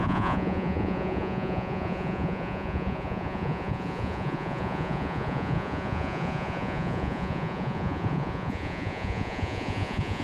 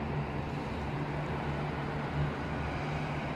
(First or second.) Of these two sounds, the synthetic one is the first